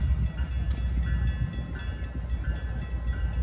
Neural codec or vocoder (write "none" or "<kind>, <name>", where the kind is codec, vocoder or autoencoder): none